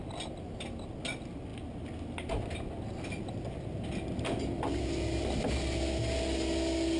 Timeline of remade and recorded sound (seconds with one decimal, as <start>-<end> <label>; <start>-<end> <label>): 0.0-7.0 recorded